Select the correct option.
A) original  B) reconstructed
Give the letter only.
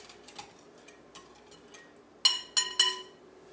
A